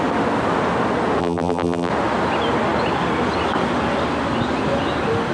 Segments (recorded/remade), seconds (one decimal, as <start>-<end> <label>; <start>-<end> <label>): 0.0-1.2 recorded; 1.2-1.9 remade; 1.9-5.3 recorded